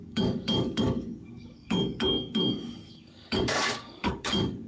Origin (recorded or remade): remade